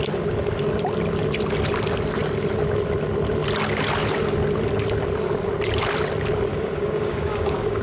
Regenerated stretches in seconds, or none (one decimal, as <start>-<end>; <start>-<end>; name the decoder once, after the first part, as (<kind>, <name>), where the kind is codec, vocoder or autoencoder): 6.5-7.8 (codec, DAC)